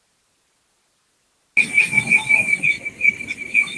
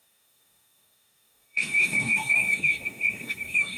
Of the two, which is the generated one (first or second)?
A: second